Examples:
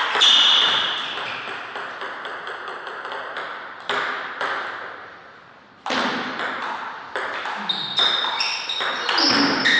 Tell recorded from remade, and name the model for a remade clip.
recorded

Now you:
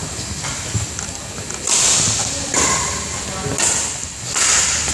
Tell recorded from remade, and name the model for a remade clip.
recorded